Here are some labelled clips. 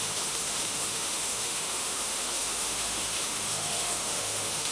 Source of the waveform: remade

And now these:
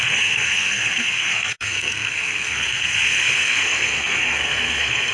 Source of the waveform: remade